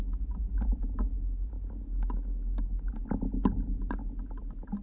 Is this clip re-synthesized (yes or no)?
no